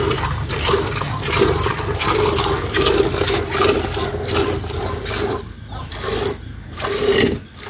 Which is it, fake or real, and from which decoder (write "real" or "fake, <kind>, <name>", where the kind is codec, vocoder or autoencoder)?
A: real